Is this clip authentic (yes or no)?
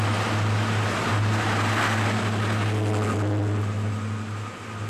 yes